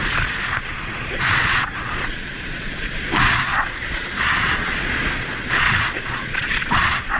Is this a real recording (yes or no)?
no